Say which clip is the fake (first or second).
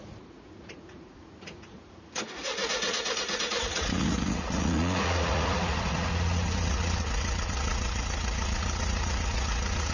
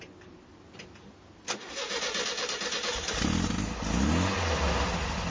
first